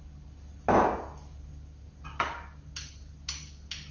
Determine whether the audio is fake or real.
real